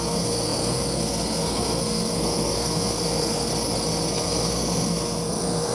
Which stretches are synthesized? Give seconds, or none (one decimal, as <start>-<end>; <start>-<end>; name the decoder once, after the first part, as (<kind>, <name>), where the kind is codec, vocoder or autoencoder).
0.0-3.5 (codec, SNAC); 4.1-5.7